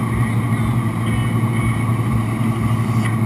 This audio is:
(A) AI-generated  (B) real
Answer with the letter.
B